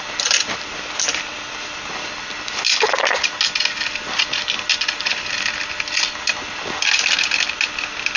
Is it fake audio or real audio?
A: real